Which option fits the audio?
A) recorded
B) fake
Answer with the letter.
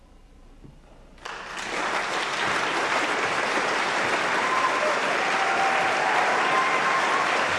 B